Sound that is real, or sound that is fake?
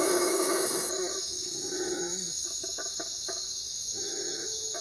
fake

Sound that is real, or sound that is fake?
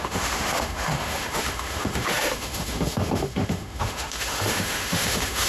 fake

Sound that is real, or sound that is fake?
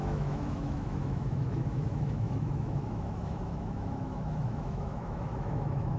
fake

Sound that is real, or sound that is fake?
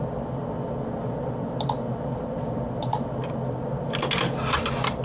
real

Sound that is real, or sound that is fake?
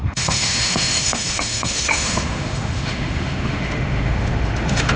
fake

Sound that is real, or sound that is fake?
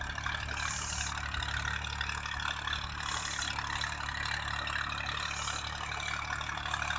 real